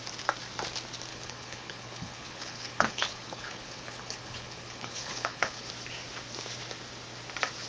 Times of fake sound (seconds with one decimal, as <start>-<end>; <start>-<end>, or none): 1.1-5.7